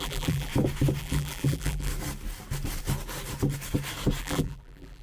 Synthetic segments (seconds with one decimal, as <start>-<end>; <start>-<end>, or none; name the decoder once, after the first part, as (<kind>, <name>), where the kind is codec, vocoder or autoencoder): 0.0-0.5 (vocoder, BigVGAN v2); 1.0-1.9; 4.2-5.0

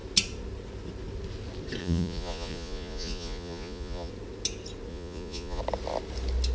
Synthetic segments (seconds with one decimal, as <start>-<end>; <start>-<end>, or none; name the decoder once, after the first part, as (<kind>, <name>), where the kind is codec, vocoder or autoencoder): 1.8-4.1 (vocoder, Vocos); 4.9-5.6

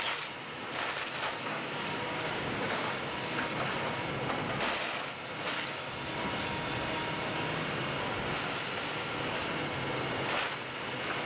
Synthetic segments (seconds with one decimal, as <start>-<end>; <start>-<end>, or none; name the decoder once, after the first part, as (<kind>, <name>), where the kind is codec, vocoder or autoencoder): 1.5-3.0 (codec, DAC)

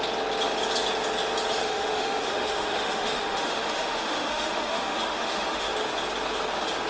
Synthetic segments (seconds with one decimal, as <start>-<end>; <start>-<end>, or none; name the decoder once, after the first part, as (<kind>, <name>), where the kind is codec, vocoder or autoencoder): 1.6-5.7 (autoencoder, DAC-VAE)

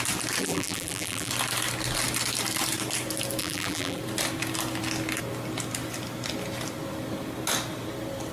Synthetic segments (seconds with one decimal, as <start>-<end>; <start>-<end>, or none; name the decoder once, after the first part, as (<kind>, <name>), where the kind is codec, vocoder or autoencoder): 0.4-1.3 (vocoder, BigVGAN v2); 3.4-4.0